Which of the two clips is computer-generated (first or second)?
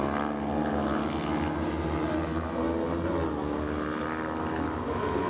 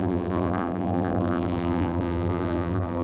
second